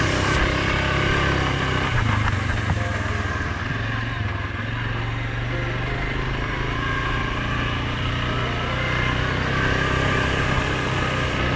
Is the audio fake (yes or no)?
no